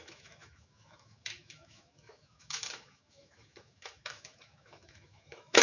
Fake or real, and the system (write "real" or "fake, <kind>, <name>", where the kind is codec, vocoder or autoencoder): fake, autoencoder, DAC-VAE